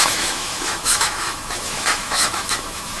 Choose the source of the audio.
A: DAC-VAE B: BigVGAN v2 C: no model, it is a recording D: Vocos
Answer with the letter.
A